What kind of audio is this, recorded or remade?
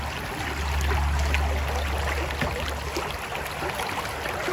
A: recorded